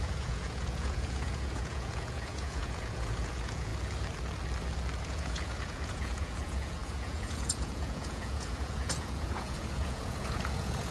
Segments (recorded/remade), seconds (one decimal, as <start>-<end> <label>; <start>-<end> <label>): 0.0-3.7 remade; 3.7-5.0 recorded; 5.0-10.9 remade